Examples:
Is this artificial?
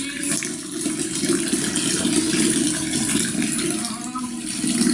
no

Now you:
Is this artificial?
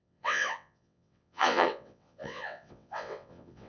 yes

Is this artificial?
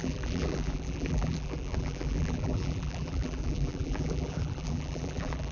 yes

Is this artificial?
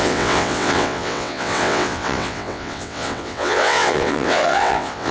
yes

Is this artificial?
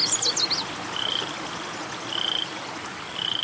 no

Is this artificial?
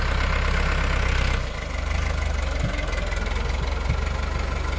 no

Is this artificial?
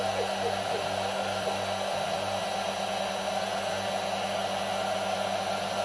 no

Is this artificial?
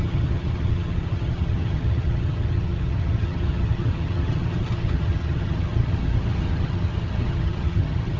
yes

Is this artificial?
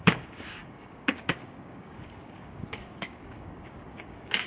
yes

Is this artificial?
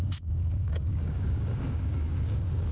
yes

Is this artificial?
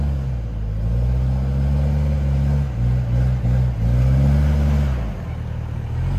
no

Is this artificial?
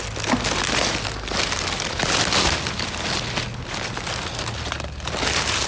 no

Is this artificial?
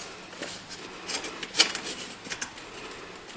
no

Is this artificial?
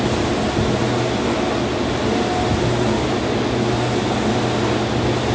no